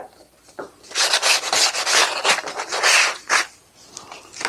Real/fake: real